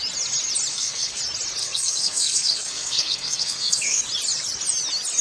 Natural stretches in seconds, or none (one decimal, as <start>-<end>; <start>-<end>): 0.0-0.7; 1.2-1.6; 4.0-5.2